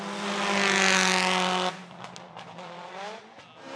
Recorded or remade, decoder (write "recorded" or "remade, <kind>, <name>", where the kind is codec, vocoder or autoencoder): recorded